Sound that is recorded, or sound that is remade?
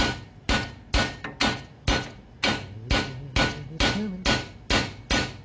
recorded